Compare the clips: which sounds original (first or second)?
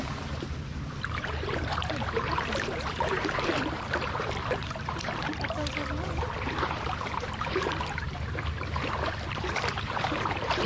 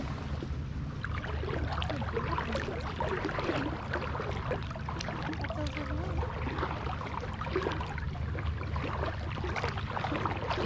second